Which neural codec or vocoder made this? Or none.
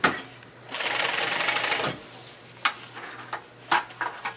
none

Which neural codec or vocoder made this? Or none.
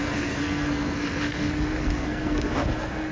codec, SNAC